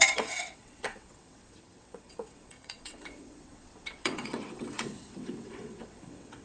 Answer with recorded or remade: remade